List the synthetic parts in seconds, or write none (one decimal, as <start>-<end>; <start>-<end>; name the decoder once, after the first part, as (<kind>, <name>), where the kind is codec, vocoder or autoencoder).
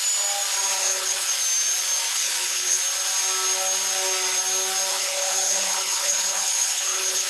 0.8-1.3 (codec, HILCodec); 2.1-2.8; 4.9-7.3